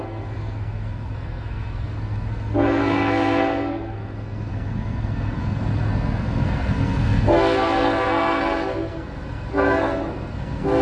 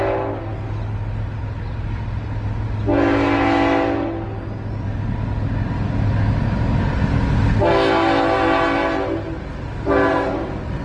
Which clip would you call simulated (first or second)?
first